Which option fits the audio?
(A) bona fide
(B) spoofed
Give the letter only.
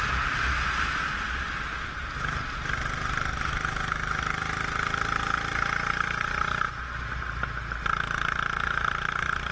A